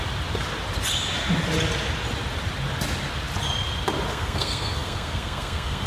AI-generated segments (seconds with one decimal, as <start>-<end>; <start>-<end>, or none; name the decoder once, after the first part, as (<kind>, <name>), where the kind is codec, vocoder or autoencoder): 4.1-5.9 (codec, SNAC)